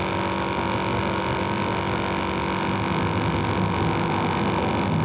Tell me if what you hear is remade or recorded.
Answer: recorded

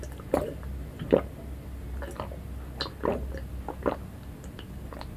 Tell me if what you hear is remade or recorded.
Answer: recorded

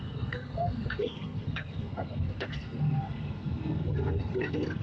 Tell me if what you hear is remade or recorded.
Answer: remade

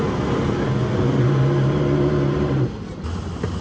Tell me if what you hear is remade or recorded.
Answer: recorded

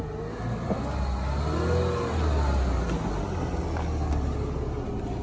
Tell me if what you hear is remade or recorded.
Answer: recorded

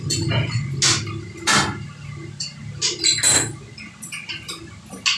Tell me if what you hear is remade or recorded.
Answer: recorded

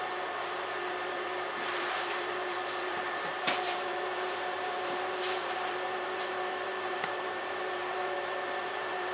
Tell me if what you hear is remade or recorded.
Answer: remade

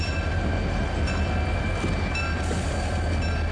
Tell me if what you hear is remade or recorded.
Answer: recorded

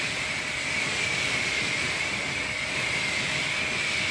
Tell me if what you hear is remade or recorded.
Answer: recorded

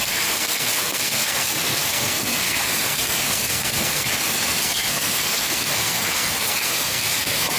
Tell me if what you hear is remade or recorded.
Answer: remade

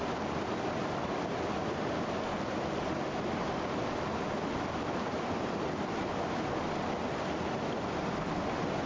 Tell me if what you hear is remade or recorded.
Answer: recorded